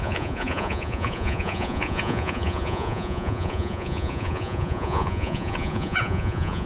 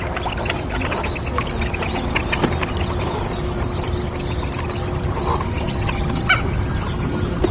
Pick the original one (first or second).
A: second